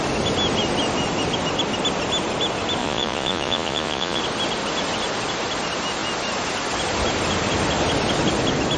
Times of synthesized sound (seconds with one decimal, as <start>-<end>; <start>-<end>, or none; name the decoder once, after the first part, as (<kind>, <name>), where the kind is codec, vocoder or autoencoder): 2.8-4.2 (vocoder, Vocos)